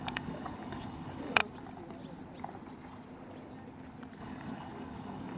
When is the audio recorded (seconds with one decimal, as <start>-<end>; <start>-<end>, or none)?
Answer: 1.4-4.2